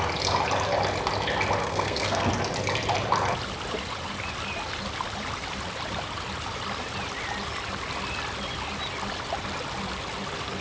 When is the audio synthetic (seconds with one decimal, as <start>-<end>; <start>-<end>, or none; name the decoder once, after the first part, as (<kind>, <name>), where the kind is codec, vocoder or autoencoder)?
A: 1.6-2.3 (codec, SNAC)